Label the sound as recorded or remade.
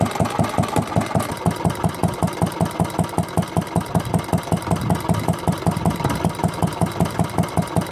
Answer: recorded